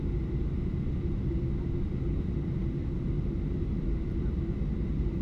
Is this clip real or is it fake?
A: real